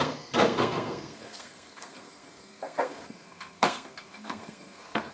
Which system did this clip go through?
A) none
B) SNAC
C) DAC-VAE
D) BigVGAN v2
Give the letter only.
B